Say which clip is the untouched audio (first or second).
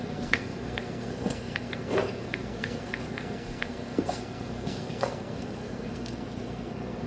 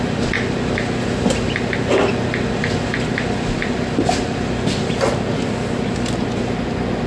second